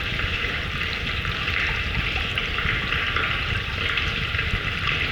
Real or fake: fake